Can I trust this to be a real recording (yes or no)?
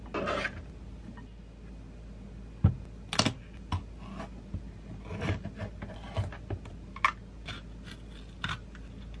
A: yes